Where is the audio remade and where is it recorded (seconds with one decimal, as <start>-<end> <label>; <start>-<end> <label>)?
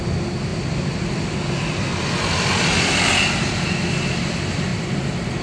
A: 0.0-5.4 recorded